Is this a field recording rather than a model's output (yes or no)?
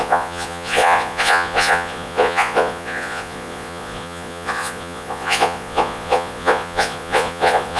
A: no